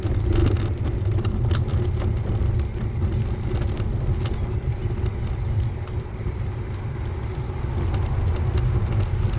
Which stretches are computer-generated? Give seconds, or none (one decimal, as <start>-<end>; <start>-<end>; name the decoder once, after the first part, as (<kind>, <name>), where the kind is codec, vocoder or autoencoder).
none